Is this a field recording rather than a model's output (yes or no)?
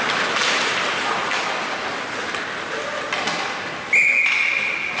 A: yes